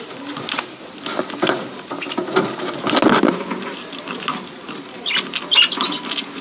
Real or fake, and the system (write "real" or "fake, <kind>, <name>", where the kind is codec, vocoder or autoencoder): real